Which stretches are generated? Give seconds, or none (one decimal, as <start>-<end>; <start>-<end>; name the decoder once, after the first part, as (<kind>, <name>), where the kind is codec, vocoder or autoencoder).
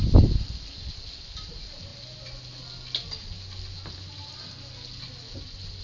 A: none